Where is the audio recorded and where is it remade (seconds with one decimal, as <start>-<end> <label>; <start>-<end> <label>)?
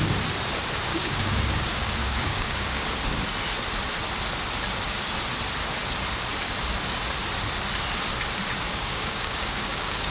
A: 0.0-0.9 recorded; 0.9-2.8 remade; 2.8-8.7 recorded; 8.7-10.1 remade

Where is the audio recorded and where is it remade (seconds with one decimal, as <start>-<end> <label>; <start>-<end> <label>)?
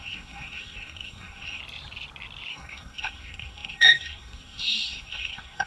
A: 0.0-1.6 remade; 1.6-2.5 recorded; 2.5-5.7 remade